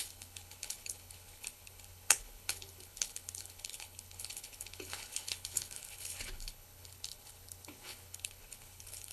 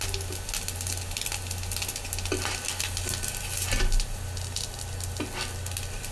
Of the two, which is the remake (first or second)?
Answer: first